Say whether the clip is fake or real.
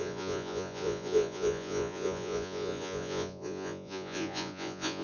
fake